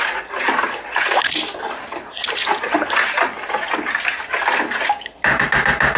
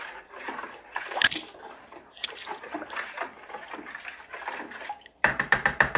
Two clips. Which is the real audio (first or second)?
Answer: first